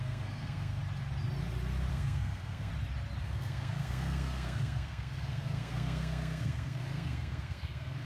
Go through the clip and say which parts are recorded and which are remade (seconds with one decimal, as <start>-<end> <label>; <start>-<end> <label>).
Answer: 0.0-0.8 remade; 0.8-1.9 recorded; 1.9-2.7 remade; 2.7-3.2 recorded; 3.2-8.1 remade